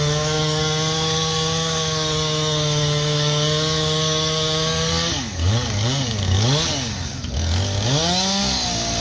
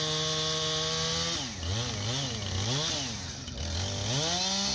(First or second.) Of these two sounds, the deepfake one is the first